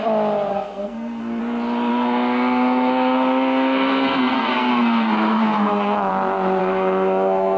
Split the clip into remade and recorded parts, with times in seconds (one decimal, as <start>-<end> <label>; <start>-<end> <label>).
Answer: 0.0-0.5 recorded; 0.5-1.4 remade; 1.4-1.9 recorded; 1.9-6.1 remade; 6.1-6.6 recorded; 6.6-7.6 remade